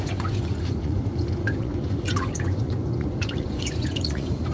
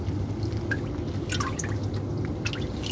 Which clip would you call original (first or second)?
second